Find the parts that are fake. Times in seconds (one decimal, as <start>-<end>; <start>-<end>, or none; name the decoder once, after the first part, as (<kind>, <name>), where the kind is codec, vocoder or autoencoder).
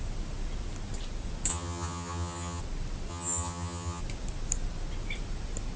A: 1.5-2.6 (vocoder, HiFi-GAN); 3.1-4.0